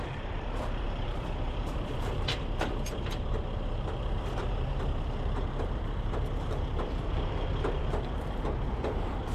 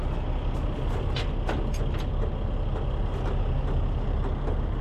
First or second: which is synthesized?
first